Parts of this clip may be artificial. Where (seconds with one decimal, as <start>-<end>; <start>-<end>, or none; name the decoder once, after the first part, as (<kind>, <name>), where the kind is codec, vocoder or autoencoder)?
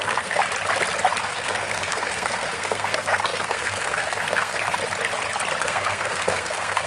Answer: 0.0-0.4 (codec, SNAC); 1.2-4.8; 5.6-6.9